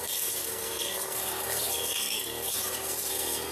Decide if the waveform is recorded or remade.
remade